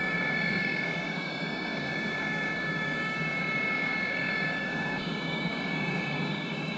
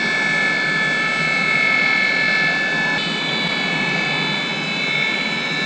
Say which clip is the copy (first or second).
first